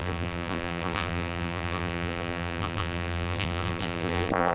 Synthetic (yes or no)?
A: yes